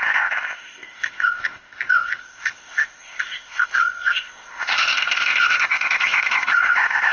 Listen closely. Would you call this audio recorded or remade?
remade